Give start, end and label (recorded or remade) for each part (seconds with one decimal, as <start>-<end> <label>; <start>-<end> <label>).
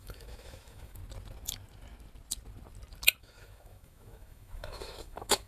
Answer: 0.0-1.0 remade; 1.0-3.2 recorded; 3.2-5.5 remade